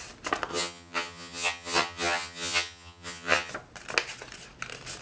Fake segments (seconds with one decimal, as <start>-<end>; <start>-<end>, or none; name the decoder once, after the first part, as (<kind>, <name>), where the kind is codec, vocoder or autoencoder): 0.5-3.5 (vocoder, HiFi-GAN)

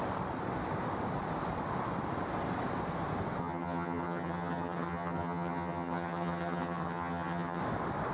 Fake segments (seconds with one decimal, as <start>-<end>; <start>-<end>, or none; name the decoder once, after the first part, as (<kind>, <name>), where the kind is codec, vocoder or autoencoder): 3.4-7.6 (vocoder, HiFi-GAN)

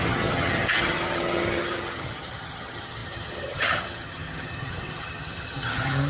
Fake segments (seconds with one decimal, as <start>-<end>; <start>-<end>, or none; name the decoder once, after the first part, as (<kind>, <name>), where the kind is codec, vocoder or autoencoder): 0.0-6.1 (vocoder, HiFi-GAN)

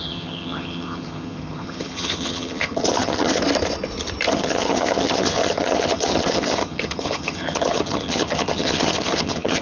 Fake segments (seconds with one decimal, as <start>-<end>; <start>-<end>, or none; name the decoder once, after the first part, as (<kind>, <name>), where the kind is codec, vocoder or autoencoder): 0.0-3.4 (vocoder, HiFi-GAN); 4.3-9.6

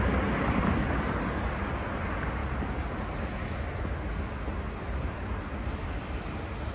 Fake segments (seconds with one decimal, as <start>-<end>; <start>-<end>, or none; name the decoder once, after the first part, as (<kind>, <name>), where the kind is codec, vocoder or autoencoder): none